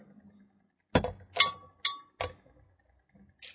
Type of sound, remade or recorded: recorded